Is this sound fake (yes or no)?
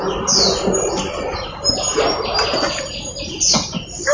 no